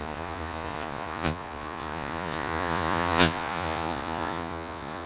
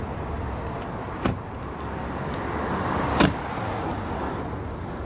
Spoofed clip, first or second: first